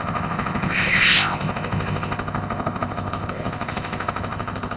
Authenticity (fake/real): fake